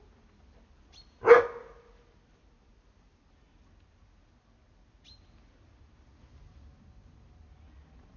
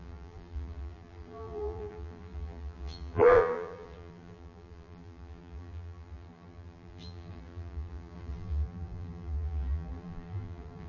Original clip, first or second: first